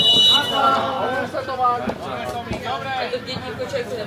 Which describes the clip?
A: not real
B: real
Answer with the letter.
B